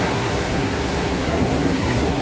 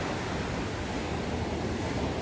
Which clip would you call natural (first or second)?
second